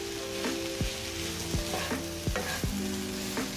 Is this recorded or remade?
recorded